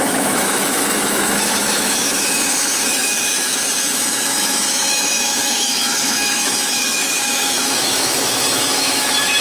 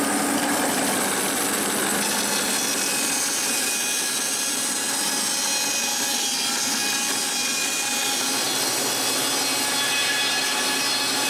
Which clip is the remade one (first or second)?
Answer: first